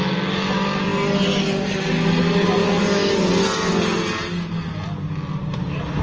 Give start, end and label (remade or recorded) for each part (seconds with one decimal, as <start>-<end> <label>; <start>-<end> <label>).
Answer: 0.0-6.0 recorded